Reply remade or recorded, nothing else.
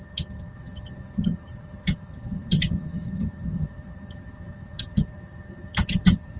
remade